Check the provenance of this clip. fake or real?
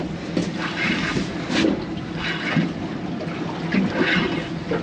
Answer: real